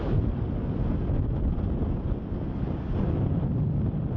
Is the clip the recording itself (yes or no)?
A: yes